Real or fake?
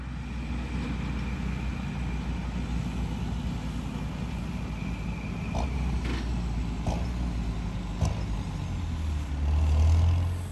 real